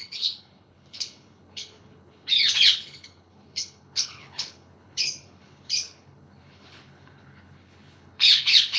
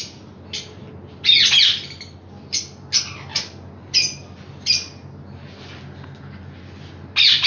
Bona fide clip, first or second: second